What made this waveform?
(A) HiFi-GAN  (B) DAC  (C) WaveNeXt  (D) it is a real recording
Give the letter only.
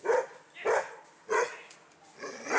D